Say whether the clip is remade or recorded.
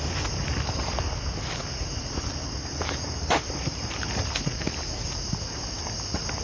recorded